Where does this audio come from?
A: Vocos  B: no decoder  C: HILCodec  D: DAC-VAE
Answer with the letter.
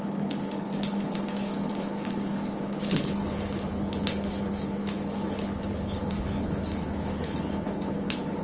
C